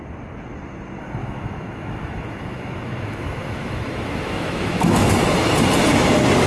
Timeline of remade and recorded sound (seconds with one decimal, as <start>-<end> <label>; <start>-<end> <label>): 0.0-1.2 recorded; 1.2-5.1 remade; 5.1-6.5 recorded